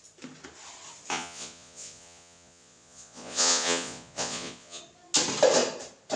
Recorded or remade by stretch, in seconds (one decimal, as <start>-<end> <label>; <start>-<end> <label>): 0.0-1.1 recorded; 1.1-4.8 remade; 4.8-6.2 recorded